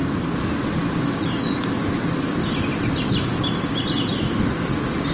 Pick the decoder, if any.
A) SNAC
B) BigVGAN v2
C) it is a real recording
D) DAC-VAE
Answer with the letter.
C